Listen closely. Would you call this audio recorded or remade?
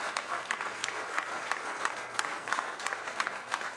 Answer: remade